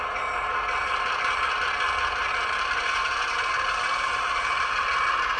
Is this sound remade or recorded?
recorded